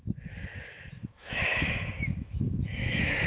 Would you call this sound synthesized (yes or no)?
yes